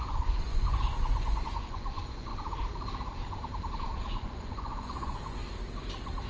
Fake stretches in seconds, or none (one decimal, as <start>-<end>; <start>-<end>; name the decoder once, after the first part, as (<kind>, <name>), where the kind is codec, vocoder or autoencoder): 0.0-2.3 (vocoder, Vocos); 3.9-5.4